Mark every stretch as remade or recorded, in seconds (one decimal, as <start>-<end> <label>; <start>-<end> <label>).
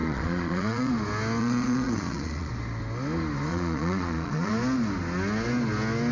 0.0-0.9 remade; 0.9-1.4 recorded; 1.4-2.5 remade; 2.5-3.5 recorded; 3.5-4.5 remade; 4.5-6.1 recorded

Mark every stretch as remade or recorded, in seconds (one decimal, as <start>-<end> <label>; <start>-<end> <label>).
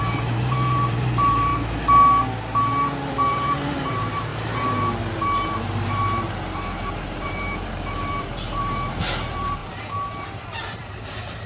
0.0-1.5 remade; 1.5-3.1 recorded; 3.1-9.6 remade; 9.6-10.6 recorded; 10.6-11.5 remade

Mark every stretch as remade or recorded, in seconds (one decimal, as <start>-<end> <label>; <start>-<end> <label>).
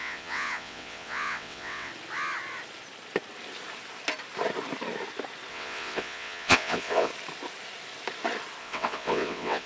0.0-1.9 remade; 1.9-5.5 recorded; 5.5-7.1 remade; 7.1-8.6 recorded; 8.6-9.7 remade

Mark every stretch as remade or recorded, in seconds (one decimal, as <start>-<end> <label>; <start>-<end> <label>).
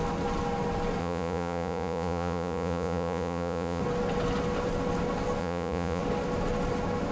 0.0-1.0 recorded; 1.0-3.8 remade; 3.8-5.4 recorded; 5.4-6.0 remade; 6.0-7.1 recorded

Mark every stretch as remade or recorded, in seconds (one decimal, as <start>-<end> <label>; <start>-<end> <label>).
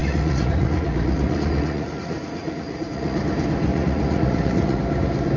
0.0-3.2 remade; 3.2-3.7 recorded; 3.7-4.8 remade; 4.8-5.4 recorded